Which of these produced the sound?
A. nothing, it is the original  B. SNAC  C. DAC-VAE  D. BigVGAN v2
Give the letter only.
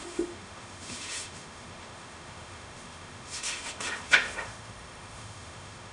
C